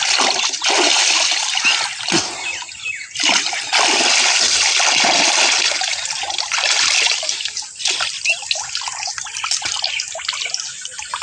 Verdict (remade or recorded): recorded